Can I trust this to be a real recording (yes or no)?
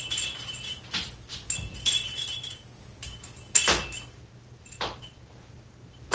yes